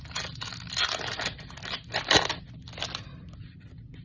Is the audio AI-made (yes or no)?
no